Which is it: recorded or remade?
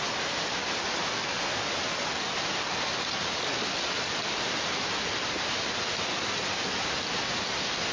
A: recorded